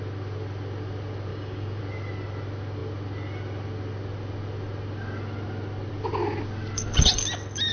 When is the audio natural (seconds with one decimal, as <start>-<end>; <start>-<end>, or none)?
0.0-1.3; 1.8-7.7